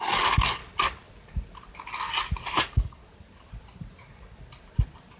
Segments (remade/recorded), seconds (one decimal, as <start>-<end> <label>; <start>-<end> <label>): 0.0-0.6 remade; 0.6-2.6 recorded; 2.6-3.0 remade; 3.0-5.2 recorded